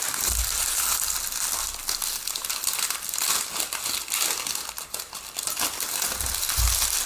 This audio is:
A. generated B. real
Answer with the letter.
B